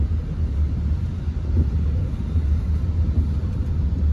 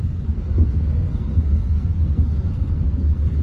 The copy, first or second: second